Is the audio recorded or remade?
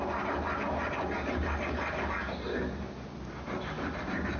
recorded